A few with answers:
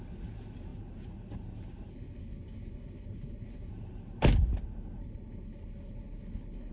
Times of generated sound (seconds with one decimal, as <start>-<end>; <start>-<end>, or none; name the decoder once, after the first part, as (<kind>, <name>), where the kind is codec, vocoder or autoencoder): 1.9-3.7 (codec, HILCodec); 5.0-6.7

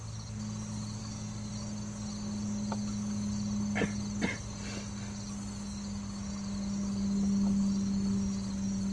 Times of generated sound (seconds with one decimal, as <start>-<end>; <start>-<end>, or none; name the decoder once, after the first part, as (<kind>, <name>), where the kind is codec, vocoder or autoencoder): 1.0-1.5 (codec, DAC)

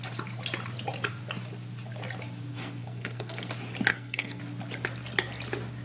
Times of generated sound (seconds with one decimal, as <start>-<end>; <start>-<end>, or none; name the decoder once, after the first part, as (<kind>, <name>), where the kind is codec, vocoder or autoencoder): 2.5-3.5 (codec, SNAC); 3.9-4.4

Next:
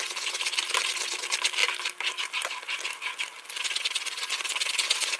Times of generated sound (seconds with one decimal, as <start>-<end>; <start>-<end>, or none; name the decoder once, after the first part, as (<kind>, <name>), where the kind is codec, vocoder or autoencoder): none

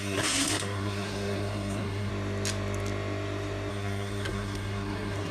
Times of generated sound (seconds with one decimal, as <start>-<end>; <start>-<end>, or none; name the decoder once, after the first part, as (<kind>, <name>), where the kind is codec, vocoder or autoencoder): 0.0-2.1 (codec, SNAC); 3.7-5.3

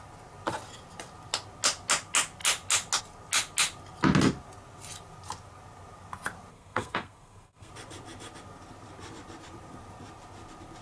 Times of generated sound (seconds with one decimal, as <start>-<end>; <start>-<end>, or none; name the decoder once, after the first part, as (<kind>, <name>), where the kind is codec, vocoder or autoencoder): 6.5-7.7 (codec, SNAC)

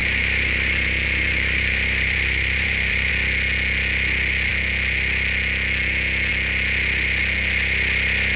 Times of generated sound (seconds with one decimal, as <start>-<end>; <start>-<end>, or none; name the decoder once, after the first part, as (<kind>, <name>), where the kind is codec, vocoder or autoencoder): 0.0-3.1 (vocoder, BigVGAN v2)